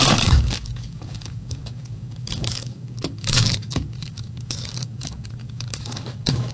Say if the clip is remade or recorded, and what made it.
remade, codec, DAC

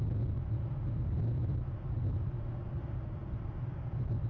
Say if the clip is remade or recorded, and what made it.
recorded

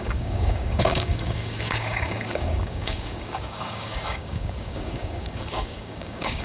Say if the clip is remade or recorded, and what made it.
remade, codec, DAC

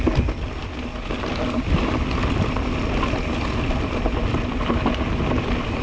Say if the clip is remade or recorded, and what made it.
recorded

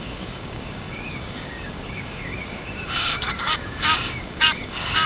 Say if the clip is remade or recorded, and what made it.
remade, codec, DAC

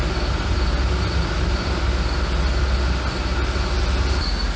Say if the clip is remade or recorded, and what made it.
recorded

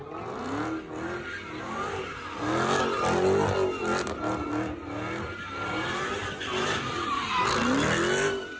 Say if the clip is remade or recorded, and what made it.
recorded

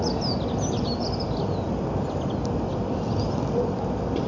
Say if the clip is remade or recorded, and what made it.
recorded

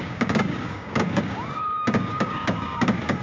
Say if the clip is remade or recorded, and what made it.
remade, codec, DAC